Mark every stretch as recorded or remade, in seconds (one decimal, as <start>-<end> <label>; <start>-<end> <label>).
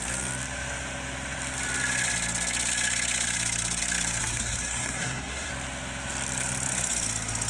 0.0-4.2 recorded; 4.2-5.5 remade; 5.5-7.5 recorded